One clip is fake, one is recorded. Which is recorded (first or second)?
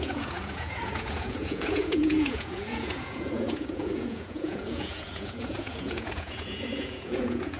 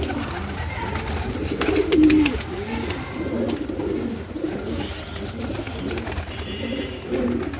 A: second